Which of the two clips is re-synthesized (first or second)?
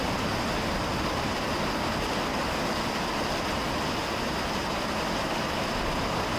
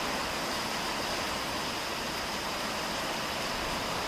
second